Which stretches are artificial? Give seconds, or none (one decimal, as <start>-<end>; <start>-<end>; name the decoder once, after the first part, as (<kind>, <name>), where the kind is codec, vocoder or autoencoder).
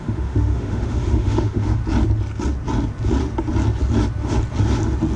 0.0-1.8 (autoencoder, DAC-VAE)